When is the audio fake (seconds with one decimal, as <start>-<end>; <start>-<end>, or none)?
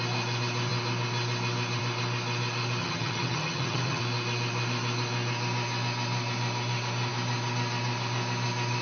2.8-4.0